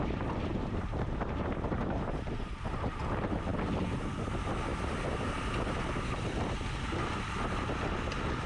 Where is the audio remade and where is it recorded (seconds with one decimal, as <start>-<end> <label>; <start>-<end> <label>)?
0.0-0.5 recorded; 0.5-3.0 remade; 3.0-8.5 recorded